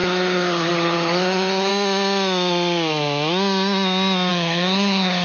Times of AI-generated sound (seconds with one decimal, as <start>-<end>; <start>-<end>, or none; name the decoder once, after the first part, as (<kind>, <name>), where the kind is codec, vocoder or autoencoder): 0.0-1.7 (codec, HILCodec); 4.3-5.2